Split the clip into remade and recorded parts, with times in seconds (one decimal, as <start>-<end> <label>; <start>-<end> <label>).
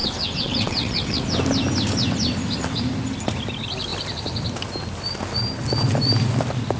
0.0-1.2 remade; 1.2-6.8 recorded